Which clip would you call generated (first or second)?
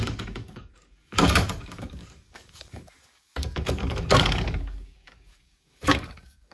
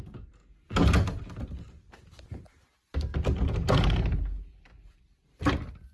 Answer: first